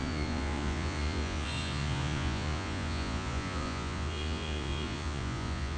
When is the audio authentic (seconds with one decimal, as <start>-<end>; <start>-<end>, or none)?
none